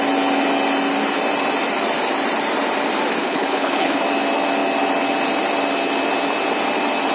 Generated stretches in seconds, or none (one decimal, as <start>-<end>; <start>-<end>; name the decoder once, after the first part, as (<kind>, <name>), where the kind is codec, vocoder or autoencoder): 3.2-4.0 (codec, HILCodec)